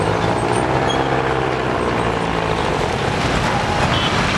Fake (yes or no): no